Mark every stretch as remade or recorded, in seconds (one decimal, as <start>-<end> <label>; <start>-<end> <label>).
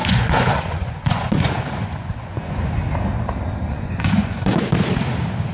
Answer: 0.0-2.7 remade; 2.7-3.7 recorded; 3.7-4.6 remade; 4.6-5.5 recorded